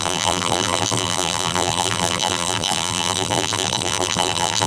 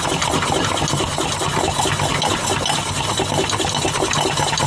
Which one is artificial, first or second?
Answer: first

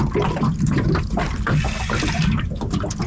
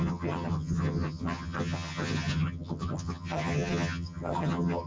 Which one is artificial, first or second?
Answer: second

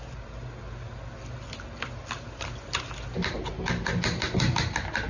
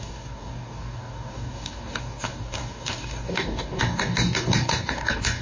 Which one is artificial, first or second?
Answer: second